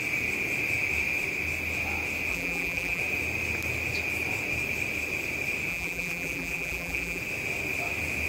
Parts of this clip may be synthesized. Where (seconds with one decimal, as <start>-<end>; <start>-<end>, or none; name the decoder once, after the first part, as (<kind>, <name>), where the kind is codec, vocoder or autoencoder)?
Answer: 2.3-3.0 (vocoder, BigVGAN v2); 5.7-7.2